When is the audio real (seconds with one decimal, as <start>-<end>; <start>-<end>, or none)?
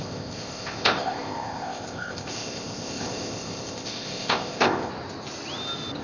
4.9-6.0